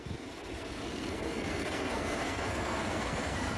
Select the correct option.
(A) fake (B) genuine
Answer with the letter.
A